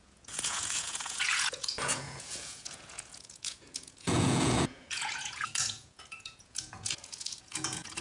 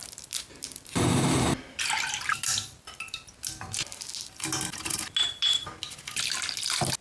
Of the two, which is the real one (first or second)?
second